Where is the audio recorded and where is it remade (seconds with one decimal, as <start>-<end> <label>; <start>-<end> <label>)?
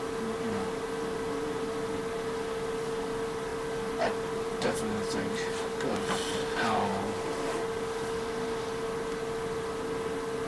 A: 0.0-3.5 recorded; 3.5-4.5 remade; 4.5-6.9 recorded; 6.9-9.0 remade; 9.0-10.5 recorded